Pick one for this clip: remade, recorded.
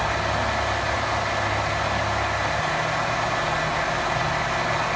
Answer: recorded